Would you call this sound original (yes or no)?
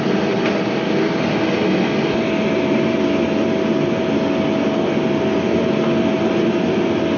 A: yes